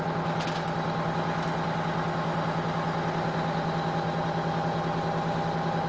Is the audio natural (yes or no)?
yes